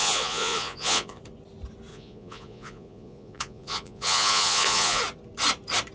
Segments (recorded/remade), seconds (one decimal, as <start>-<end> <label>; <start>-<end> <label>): 0.0-1.2 remade; 1.2-1.9 recorded; 1.9-5.0 remade; 5.0-5.9 recorded